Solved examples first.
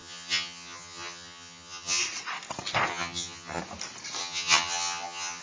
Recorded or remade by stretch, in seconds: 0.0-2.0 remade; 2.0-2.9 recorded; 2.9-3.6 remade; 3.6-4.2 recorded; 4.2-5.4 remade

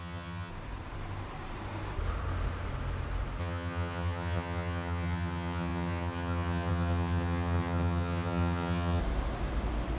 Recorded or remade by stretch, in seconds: 0.0-0.5 remade; 0.5-3.4 recorded; 3.4-9.0 remade; 9.0-10.0 recorded

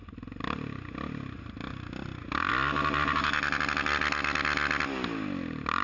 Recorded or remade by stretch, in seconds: 0.0-5.8 recorded

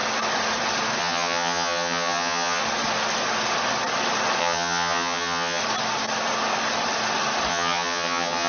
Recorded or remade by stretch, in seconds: 0.0-1.0 recorded; 1.0-2.6 remade; 2.6-4.4 recorded; 4.4-5.6 remade; 5.6-7.5 recorded; 7.5-8.5 remade

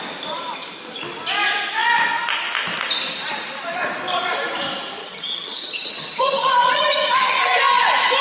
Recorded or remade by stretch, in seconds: 0.0-5.0 recorded; 5.0-7.6 remade; 7.6-8.2 recorded

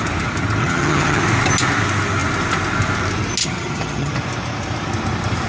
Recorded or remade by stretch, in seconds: 0.0-0.6 recorded; 0.6-1.2 remade; 1.2-3.4 recorded; 3.4-4.1 remade; 4.1-5.5 recorded

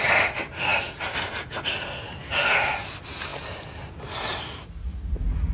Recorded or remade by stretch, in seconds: 0.0-5.5 recorded